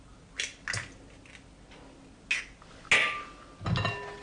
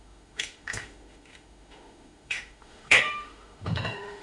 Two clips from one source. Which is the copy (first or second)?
second